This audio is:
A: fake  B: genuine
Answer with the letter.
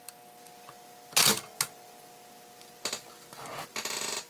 B